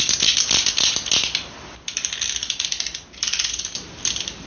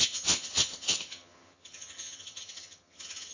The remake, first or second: second